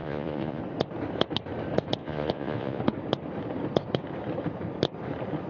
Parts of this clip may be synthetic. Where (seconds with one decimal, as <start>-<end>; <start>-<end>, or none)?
0.0-0.6; 2.0-2.8